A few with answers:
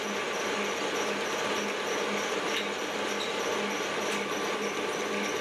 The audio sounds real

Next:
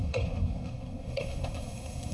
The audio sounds fake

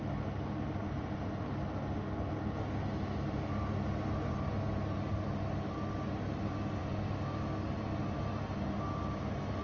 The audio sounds real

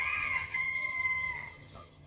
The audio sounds fake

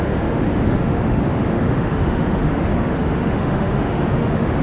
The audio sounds fake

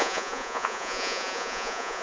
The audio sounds fake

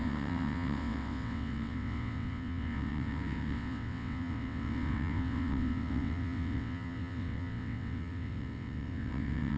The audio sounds fake